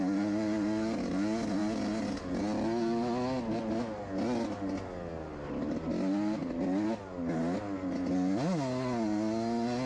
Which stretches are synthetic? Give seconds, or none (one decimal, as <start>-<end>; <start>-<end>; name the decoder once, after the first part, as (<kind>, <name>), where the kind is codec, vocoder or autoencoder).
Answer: none